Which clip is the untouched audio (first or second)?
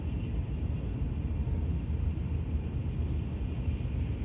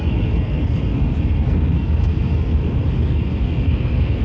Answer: first